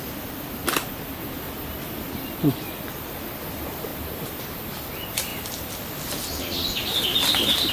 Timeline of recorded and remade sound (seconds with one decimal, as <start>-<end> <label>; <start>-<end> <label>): 0.0-0.6 remade; 0.6-2.1 recorded; 2.1-5.3 remade; 5.3-7.7 recorded